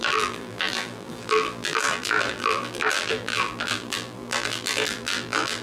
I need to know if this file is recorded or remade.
remade